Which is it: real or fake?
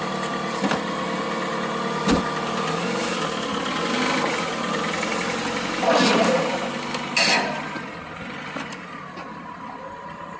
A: real